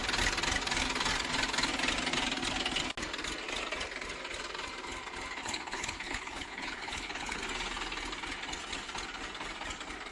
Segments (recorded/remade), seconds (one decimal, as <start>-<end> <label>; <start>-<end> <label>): 0.0-5.4 recorded; 5.4-7.4 remade; 7.4-10.1 recorded